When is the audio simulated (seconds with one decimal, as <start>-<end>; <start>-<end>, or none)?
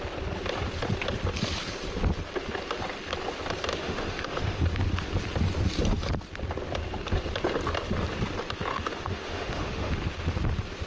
3.7-4.6; 8.7-9.9